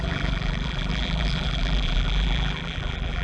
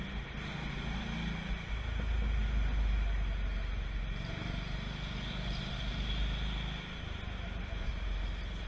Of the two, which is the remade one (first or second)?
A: first